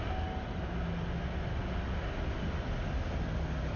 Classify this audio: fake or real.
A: real